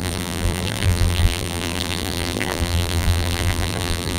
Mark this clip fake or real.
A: fake